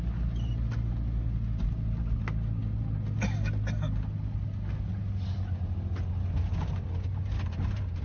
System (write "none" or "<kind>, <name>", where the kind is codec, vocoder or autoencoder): none